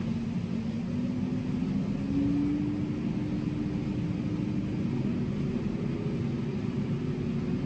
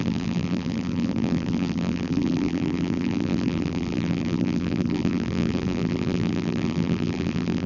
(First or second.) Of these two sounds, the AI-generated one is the second